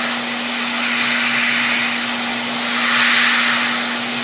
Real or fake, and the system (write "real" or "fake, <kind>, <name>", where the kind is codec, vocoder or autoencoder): real